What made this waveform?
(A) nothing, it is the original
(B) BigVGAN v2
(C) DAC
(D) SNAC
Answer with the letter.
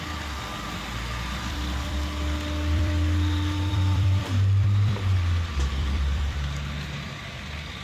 B